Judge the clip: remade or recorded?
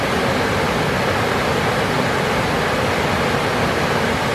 recorded